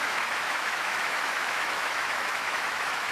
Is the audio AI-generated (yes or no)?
yes